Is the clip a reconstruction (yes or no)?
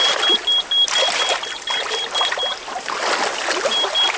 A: no